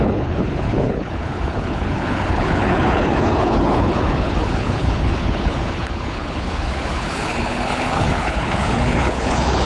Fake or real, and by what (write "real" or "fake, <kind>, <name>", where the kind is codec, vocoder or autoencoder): fake, codec, HILCodec